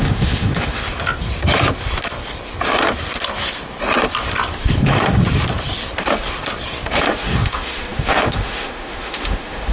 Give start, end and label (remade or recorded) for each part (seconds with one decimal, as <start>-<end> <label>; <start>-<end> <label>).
0.0-0.8 remade; 0.8-4.8 recorded; 4.8-5.2 remade; 5.2-7.0 recorded; 7.0-9.7 remade

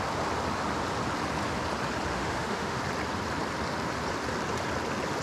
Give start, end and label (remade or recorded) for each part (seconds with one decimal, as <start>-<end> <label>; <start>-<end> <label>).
0.0-2.1 recorded; 2.1-2.8 remade; 2.8-5.2 recorded